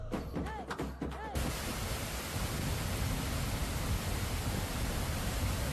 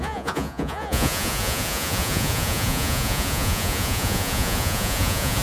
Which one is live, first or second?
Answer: first